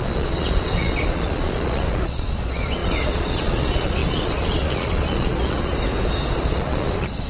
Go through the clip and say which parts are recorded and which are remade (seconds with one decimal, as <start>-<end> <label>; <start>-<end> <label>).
0.0-5.7 remade; 5.7-6.4 recorded; 6.4-7.3 remade

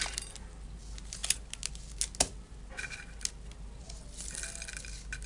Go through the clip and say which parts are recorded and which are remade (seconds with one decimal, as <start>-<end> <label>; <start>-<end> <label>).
0.0-5.3 recorded

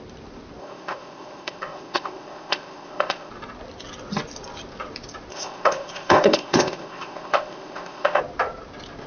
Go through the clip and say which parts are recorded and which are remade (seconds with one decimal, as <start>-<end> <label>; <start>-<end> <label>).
0.0-0.6 recorded; 0.6-3.3 remade; 3.3-5.3 recorded; 5.3-8.2 remade; 8.2-9.1 recorded

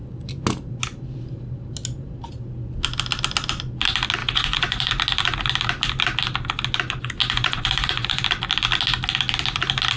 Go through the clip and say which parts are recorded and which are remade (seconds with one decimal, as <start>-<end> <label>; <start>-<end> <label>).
0.0-4.2 recorded; 4.2-4.9 remade; 4.9-7.2 recorded; 7.2-8.2 remade; 8.2-10.0 recorded

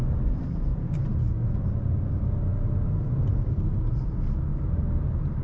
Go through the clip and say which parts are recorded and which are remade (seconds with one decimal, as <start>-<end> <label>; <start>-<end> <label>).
0.0-0.7 recorded; 0.7-2.2 remade; 2.2-4.5 recorded; 4.5-5.4 remade

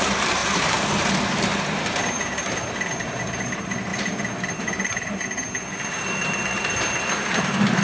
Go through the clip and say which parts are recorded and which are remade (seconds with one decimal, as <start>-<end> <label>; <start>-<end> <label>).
0.0-7.8 remade

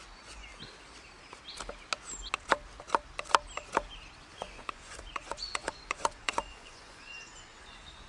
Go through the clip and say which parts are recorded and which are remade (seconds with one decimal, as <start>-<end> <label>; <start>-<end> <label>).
0.0-0.5 remade; 0.5-4.3 recorded; 4.3-8.1 remade